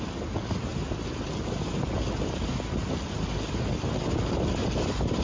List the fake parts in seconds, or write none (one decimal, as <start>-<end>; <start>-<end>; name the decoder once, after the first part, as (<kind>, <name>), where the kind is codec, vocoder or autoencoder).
none

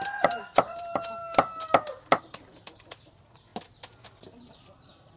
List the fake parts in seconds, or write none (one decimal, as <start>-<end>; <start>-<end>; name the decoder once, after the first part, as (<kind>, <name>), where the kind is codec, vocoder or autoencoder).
0.0-1.2 (vocoder, BigVGAN v2); 2.2-3.5; 4.2-5.2